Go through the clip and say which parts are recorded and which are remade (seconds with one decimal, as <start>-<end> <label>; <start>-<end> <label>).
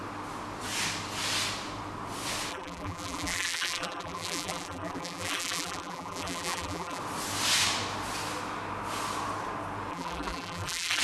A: 0.0-2.5 recorded; 2.5-7.0 remade; 7.0-9.9 recorded; 9.9-11.0 remade